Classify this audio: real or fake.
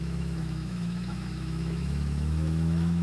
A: fake